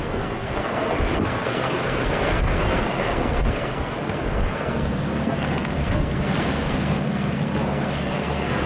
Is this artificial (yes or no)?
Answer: yes